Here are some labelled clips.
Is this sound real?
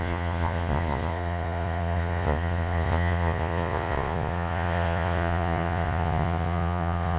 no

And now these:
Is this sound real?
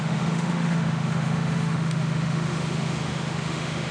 no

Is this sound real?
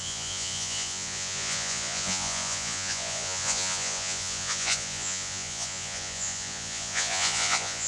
no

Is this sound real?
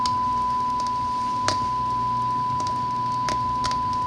yes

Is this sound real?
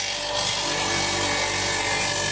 yes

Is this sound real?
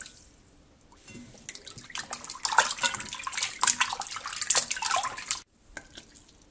yes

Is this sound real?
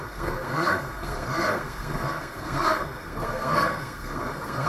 no